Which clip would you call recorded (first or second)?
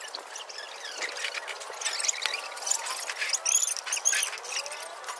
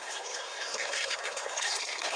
first